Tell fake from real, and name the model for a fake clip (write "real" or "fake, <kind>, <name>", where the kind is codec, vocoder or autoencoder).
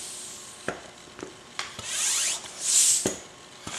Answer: real